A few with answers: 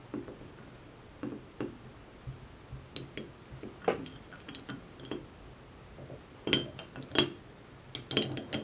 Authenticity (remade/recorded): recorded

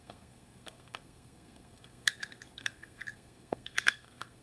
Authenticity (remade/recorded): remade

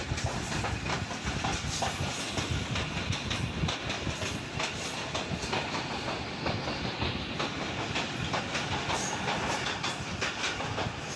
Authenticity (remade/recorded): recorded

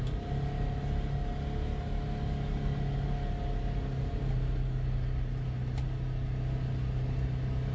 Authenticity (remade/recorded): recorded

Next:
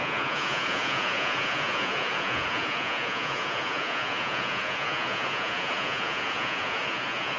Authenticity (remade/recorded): remade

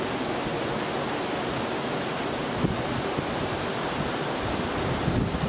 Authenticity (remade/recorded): recorded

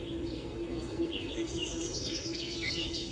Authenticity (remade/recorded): remade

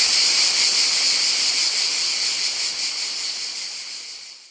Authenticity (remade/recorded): recorded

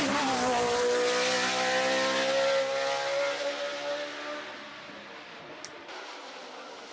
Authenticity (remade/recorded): recorded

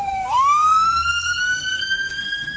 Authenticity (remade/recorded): remade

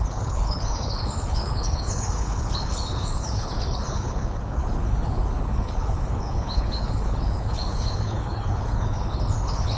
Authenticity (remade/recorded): remade